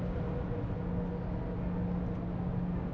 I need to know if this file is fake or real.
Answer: real